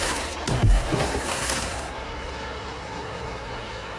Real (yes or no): no